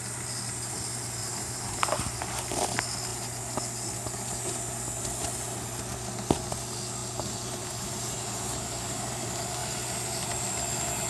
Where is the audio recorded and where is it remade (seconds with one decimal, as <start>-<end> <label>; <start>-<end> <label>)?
0.0-1.2 recorded; 1.2-1.8 remade; 1.8-7.0 recorded; 7.0-9.1 remade; 9.1-9.6 recorded; 9.6-10.3 remade; 10.3-11.1 recorded